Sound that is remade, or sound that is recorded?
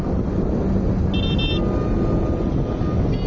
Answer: recorded